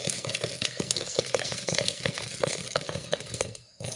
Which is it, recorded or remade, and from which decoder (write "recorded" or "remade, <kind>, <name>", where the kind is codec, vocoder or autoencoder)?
remade, codec, SNAC